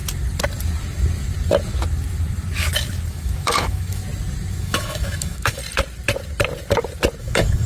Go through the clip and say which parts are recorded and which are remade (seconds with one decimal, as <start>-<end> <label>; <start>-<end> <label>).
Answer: 0.0-3.1 recorded; 3.1-4.0 remade; 4.0-4.5 recorded; 4.5-5.6 remade; 5.6-7.2 recorded; 7.2-7.7 remade